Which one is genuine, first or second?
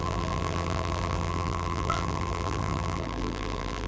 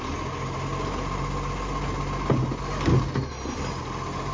second